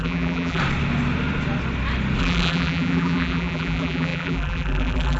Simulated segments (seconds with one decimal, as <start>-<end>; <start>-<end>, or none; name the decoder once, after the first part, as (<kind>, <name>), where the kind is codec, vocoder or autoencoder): 0.0-0.6 (vocoder, BigVGAN v2); 2.2-5.2